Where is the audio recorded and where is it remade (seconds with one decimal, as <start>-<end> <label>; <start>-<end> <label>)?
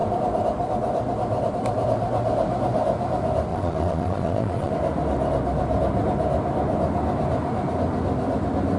0.0-3.5 recorded; 3.5-4.7 remade; 4.7-8.8 recorded